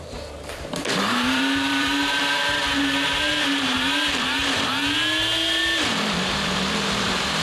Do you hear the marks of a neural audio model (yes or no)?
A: yes